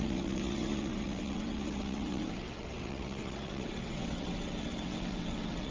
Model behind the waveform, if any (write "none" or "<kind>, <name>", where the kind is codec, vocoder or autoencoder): vocoder, WaveNeXt